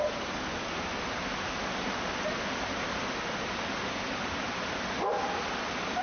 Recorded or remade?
recorded